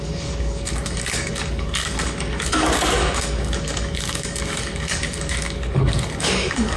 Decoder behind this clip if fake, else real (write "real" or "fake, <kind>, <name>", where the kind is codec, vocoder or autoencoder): fake, codec, DAC